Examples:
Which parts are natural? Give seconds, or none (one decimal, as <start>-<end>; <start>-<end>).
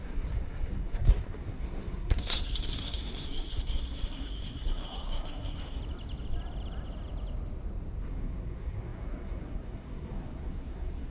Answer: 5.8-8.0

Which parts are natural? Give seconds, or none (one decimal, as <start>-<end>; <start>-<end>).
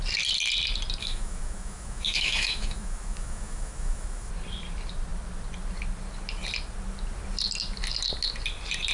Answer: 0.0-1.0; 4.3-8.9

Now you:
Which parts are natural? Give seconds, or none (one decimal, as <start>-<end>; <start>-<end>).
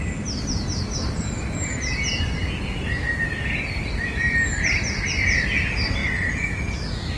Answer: 0.0-7.2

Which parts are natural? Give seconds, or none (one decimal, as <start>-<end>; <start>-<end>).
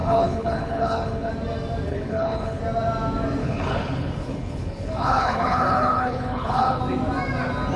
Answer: 1.3-1.9; 2.6-3.4; 6.8-7.8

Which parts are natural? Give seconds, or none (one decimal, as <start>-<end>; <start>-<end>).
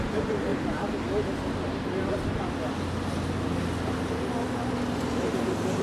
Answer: none